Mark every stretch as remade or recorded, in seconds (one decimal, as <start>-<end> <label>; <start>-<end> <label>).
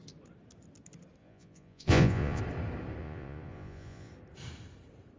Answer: 0.0-1.2 recorded; 1.2-2.4 remade; 2.4-3.0 recorded; 3.0-4.1 remade; 4.1-5.2 recorded